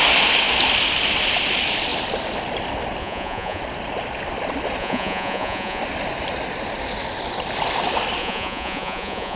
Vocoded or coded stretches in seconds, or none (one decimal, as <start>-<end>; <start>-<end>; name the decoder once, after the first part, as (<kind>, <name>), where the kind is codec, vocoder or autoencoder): 3.0-3.6 (vocoder, Vocos); 4.8-5.8; 8.2-9.4